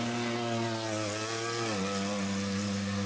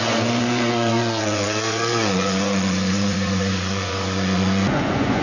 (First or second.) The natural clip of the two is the first